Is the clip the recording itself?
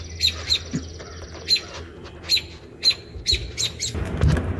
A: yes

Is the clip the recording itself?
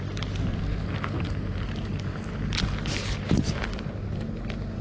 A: yes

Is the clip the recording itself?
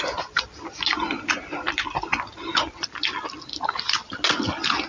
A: yes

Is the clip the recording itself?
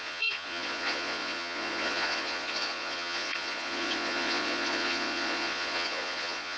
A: no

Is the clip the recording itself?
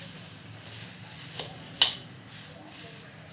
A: yes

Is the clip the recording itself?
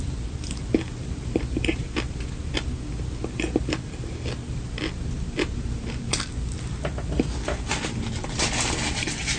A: yes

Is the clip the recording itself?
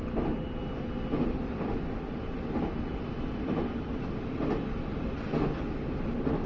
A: yes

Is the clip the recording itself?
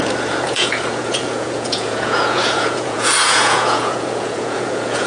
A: no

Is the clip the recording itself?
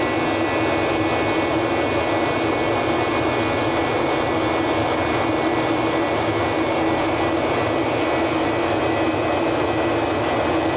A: yes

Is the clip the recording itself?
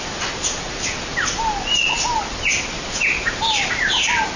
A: yes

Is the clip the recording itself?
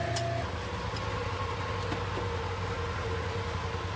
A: yes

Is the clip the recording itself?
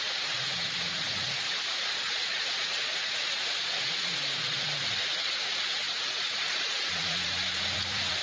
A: no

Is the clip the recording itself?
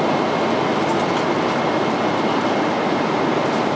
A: yes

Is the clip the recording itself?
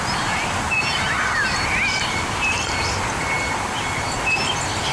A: yes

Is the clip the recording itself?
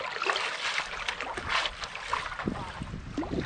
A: yes